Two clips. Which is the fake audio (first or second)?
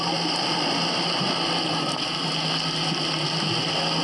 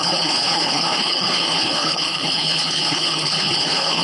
second